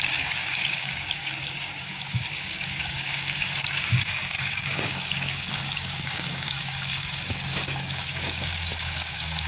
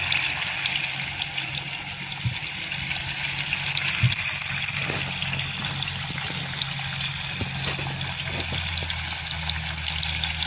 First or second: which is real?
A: second